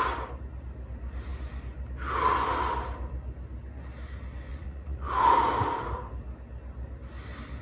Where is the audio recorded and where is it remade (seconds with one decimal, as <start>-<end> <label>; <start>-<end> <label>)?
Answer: 0.0-4.5 recorded; 4.5-5.1 remade; 5.1-7.6 recorded